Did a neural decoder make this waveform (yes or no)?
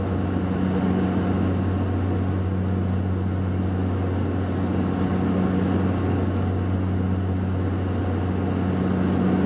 no